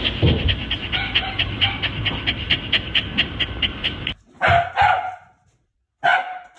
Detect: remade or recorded recorded